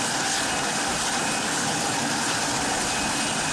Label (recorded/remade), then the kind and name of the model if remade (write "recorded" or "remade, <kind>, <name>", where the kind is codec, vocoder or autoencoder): remade, vocoder, BigVGAN v2